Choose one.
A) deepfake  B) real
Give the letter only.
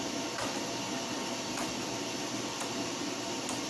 B